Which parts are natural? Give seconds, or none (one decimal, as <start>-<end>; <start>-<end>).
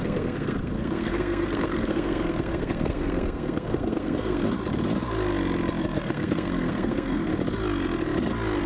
4.4-5.8; 7.3-8.7